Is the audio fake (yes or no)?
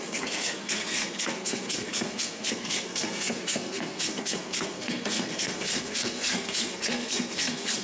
yes